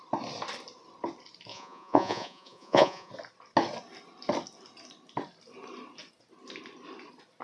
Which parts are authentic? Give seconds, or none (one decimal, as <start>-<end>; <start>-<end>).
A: 0.0-1.5; 3.1-7.4